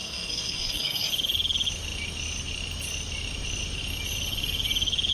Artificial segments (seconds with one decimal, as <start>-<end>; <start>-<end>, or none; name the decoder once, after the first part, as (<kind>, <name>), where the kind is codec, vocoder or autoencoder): 0.0-1.1 (codec, SNAC)